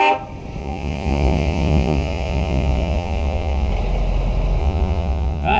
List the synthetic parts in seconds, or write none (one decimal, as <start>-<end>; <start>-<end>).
0.6-3.7; 4.6-5.6